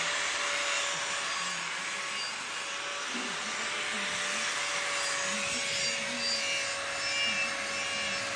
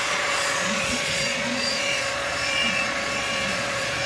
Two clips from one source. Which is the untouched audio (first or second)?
first